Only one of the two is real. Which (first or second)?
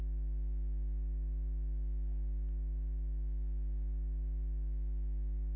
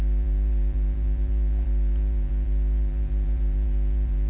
first